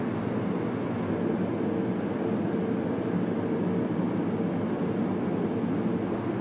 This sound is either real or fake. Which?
real